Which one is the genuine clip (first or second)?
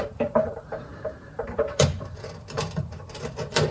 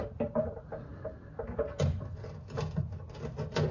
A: second